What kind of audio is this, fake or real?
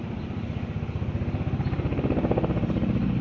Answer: real